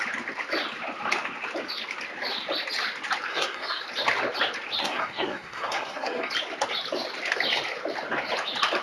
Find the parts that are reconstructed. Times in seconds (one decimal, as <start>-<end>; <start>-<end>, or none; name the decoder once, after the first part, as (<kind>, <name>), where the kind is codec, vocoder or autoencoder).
3.3-3.8 (codec, SNAC); 4.8-6.3